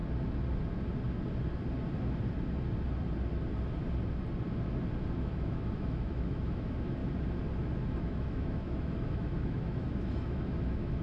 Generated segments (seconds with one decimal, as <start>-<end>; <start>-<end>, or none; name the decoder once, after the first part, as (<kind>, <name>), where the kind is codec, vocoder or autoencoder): 5.1-7.0 (autoencoder, DAC-VAE); 8.0-11.0